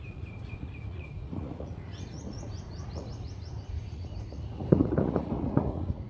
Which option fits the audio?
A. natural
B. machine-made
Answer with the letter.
B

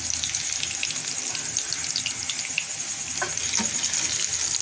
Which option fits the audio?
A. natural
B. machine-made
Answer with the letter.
A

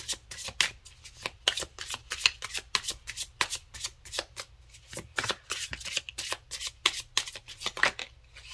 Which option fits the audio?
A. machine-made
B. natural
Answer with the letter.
B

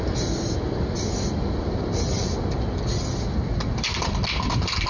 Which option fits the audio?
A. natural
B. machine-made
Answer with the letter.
A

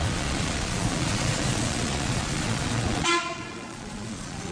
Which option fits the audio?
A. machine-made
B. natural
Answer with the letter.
A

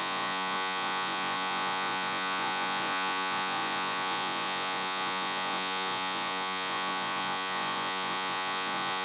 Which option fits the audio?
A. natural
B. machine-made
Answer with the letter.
B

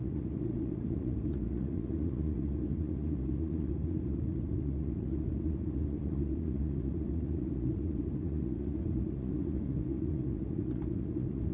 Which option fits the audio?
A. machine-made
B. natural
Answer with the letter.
A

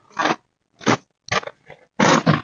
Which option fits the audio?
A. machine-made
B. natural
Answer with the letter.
B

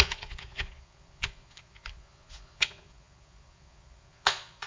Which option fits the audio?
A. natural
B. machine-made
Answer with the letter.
B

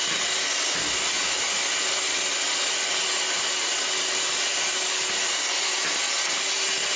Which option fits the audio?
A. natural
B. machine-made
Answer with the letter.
A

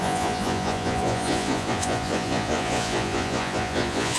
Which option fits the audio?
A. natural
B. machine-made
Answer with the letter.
B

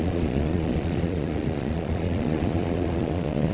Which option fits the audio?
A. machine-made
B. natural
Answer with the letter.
A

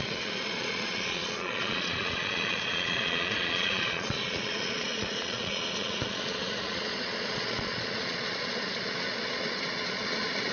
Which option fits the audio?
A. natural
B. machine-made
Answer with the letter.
B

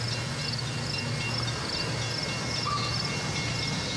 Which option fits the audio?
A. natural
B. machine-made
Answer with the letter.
A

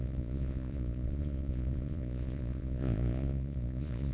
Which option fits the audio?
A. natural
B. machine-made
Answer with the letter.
B